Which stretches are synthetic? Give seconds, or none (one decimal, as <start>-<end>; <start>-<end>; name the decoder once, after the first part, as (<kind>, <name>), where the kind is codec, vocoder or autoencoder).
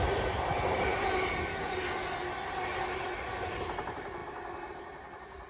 0.0-0.9 (vocoder, BigVGAN v2); 3.3-4.2; 4.7-5.5